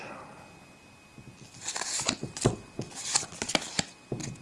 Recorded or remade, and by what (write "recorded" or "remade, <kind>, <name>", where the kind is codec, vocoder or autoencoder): recorded